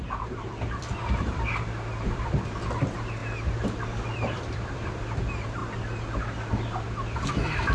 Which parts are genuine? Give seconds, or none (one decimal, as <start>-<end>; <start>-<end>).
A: 3.2-4.1; 5.6-7.3

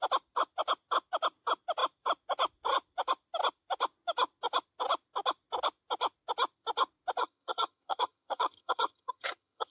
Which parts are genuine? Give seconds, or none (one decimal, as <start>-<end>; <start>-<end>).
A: 0.0-7.2

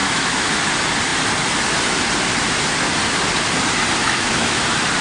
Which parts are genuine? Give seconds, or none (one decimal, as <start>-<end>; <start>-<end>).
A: 0.5-4.0; 4.6-5.0

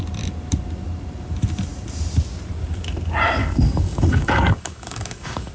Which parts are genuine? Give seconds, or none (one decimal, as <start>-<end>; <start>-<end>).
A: 0.0-3.4

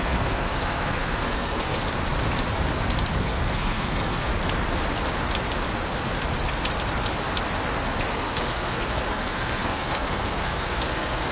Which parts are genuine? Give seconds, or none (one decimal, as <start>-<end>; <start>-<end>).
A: 1.8-3.2; 4.3-8.1